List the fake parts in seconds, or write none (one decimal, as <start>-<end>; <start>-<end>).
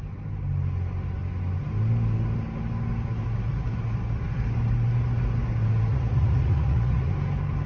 5.9-7.1